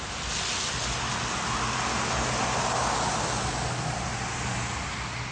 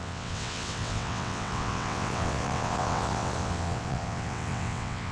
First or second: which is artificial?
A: second